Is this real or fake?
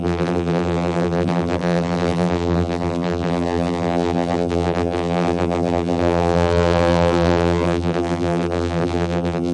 fake